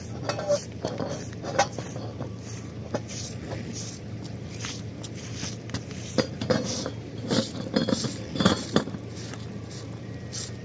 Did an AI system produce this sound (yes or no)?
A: no